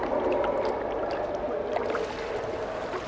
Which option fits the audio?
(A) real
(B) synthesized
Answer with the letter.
A